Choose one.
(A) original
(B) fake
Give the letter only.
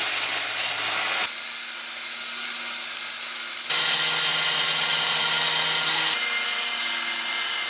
A